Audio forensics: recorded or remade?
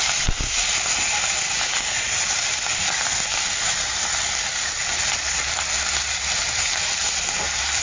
recorded